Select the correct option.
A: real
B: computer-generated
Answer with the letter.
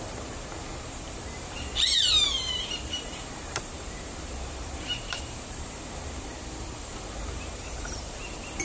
B